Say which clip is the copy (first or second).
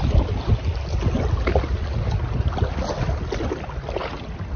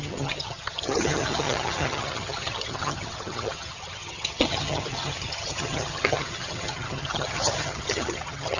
second